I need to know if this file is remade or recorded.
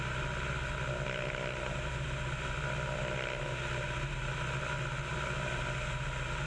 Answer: recorded